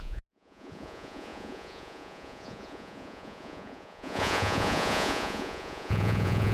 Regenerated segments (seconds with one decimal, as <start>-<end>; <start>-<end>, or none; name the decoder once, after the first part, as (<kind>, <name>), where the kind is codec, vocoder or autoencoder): 0.0-6.5 (vocoder, Vocos)